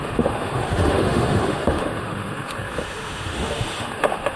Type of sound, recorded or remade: remade